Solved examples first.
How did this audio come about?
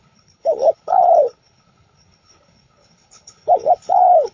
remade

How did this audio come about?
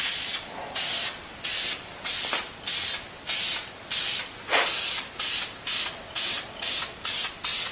recorded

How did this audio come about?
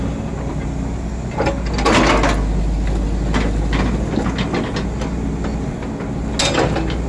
recorded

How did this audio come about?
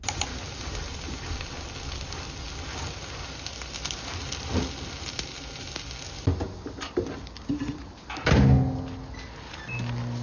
recorded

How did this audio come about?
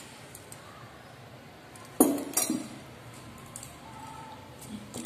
recorded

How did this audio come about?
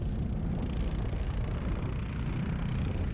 recorded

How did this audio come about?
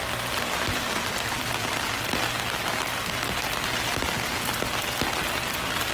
recorded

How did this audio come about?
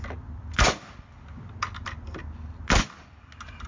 recorded